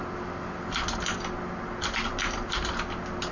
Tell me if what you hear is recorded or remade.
recorded